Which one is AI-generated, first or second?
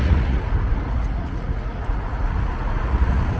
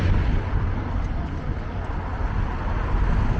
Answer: first